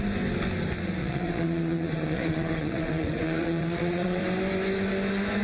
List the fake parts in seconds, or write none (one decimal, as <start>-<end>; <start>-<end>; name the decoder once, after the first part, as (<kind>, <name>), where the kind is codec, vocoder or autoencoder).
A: 1.0-4.2 (vocoder, WaveNeXt)